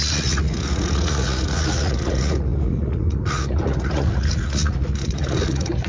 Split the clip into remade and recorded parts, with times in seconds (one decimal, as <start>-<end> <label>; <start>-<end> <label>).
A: 0.0-5.9 remade